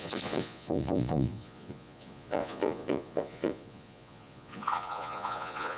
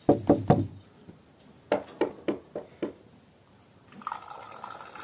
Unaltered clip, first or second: second